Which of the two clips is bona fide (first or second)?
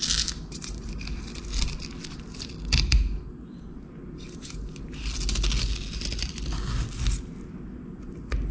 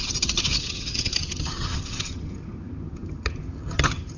first